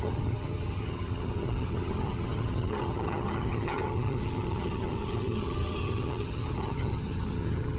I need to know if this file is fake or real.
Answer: fake